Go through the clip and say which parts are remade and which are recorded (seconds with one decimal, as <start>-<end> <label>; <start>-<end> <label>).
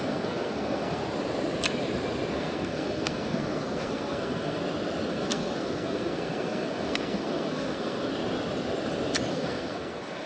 0.0-1.0 remade; 1.0-2.3 recorded; 2.3-4.6 remade; 4.6-5.1 recorded; 5.1-8.1 remade; 8.1-9.3 recorded; 9.3-10.3 remade